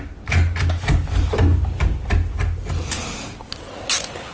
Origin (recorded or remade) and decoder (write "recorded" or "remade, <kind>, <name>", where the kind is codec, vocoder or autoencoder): recorded